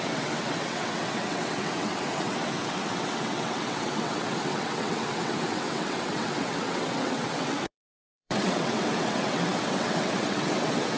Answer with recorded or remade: remade